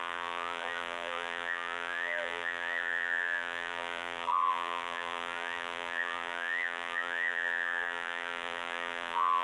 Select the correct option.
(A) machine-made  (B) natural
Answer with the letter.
A